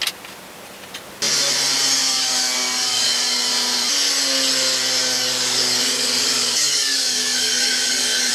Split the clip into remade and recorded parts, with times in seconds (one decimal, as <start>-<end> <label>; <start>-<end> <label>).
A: 0.0-2.0 recorded; 2.0-3.5 remade; 3.5-5.0 recorded; 5.0-8.3 remade